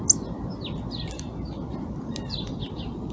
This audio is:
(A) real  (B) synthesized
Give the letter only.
A